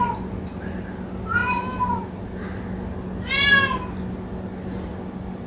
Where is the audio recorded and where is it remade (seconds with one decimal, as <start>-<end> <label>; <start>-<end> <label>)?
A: 0.0-5.5 recorded